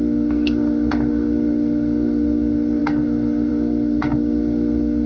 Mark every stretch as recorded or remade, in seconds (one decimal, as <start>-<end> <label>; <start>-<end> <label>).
0.0-5.1 remade

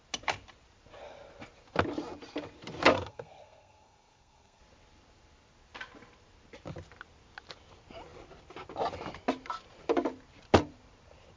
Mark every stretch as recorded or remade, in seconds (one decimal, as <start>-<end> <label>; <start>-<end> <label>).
0.0-2.9 recorded; 2.9-4.6 remade; 4.6-11.4 recorded

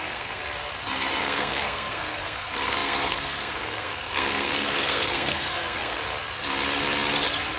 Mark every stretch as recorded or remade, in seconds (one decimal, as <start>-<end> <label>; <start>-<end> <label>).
0.0-0.4 remade; 0.4-1.2 recorded; 1.2-6.0 remade; 6.0-7.6 recorded

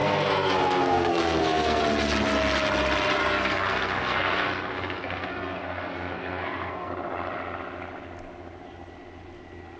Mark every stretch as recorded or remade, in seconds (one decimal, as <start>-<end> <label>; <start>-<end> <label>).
0.0-1.8 remade; 1.8-3.2 recorded; 3.2-6.9 remade; 6.9-9.8 recorded

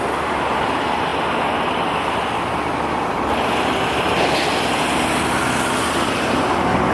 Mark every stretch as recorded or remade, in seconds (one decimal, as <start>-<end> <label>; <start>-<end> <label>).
0.0-6.9 recorded

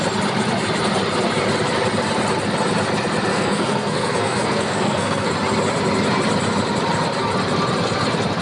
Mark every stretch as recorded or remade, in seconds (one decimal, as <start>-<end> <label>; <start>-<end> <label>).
0.0-3.3 recorded; 3.3-5.3 remade; 5.3-8.4 recorded

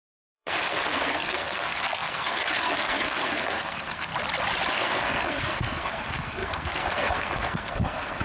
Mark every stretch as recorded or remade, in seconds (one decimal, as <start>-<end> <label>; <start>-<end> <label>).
0.0-4.1 remade; 4.1-4.7 recorded; 4.7-8.2 remade